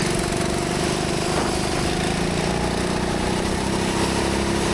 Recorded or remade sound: recorded